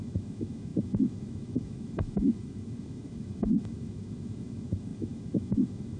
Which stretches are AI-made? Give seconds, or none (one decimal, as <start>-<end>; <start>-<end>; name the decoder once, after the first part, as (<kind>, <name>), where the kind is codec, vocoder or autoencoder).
0.0-6.0 (autoencoder, DAC-VAE)